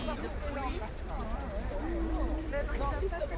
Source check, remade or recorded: remade